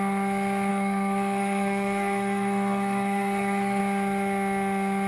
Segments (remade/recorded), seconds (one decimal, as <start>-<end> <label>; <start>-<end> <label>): 0.0-0.7 recorded; 0.7-3.8 remade; 3.8-5.1 recorded